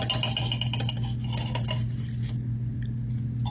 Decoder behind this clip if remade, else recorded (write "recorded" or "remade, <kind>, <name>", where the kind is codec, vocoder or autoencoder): recorded